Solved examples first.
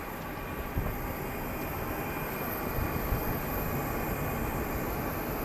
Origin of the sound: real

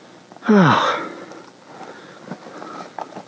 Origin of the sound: real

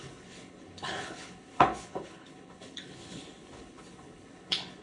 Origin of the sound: fake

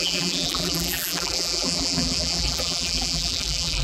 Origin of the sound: fake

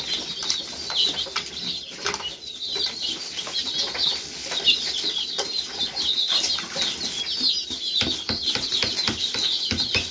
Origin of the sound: real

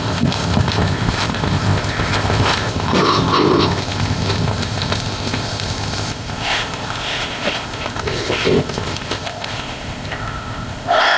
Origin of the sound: fake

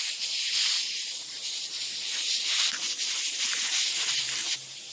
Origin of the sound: fake